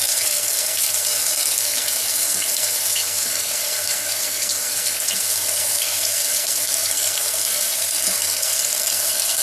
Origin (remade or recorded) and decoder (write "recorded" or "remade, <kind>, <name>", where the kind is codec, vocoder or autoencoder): remade, codec, SNAC